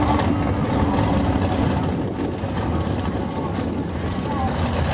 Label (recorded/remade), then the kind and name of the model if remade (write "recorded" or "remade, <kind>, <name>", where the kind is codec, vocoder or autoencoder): recorded